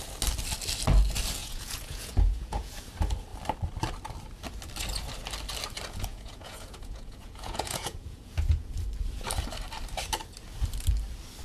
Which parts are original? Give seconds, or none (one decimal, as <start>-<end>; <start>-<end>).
0.0-1.4; 2.7-6.1; 8.7-11.4